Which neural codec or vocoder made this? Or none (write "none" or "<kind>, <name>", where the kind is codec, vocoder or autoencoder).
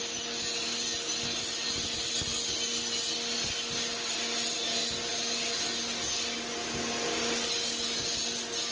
none